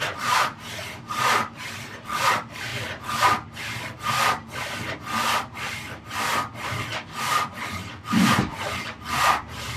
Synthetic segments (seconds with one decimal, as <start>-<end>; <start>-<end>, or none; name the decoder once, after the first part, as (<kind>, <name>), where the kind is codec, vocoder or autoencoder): 0.0-2.7 (vocoder, BigVGAN v2); 7.2-9.8